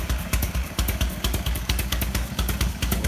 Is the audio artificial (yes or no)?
yes